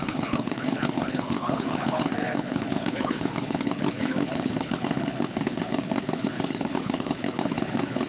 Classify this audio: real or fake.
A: fake